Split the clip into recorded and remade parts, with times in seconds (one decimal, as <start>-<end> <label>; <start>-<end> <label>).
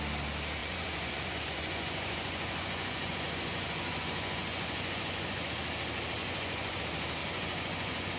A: 0.0-0.6 recorded; 0.6-5.5 remade; 5.5-6.2 recorded; 6.2-6.8 remade; 6.8-7.2 recorded; 7.2-8.2 remade